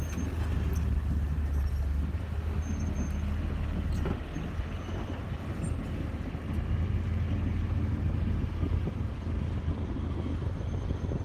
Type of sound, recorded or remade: recorded